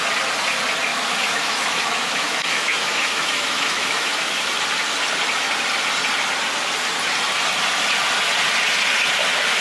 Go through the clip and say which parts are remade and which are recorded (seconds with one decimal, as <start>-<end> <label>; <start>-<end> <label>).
0.0-0.9 recorded; 0.9-4.5 remade; 4.5-9.6 recorded